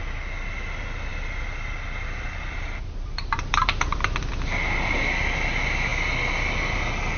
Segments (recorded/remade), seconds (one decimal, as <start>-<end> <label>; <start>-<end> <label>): 0.0-1.1 recorded; 1.1-4.3 remade; 4.3-7.2 recorded